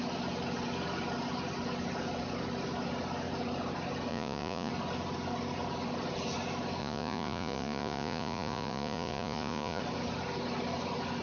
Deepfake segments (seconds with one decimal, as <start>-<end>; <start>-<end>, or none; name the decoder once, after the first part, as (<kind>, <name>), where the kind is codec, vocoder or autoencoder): 4.1-4.7 (vocoder, Vocos); 6.8-9.8